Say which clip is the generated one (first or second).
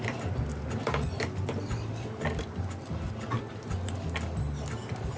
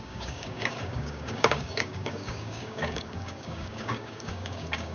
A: second